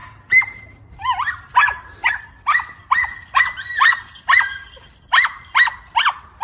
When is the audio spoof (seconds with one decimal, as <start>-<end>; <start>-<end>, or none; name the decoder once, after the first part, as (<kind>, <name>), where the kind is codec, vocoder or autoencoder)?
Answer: none